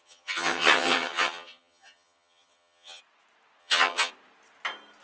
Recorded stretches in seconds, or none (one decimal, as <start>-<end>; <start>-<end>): 3.0-3.6; 4.1-5.0